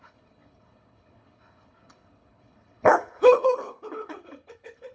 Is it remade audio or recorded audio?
remade